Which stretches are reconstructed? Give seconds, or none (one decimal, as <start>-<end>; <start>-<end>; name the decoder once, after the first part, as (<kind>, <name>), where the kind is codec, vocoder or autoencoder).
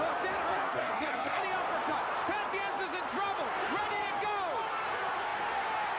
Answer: 0.5-1.4 (codec, SNAC)